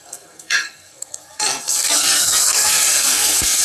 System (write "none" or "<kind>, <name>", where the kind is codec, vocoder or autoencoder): codec, SNAC